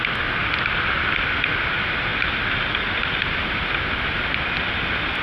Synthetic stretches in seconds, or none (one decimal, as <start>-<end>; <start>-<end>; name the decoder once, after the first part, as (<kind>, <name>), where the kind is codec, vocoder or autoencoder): none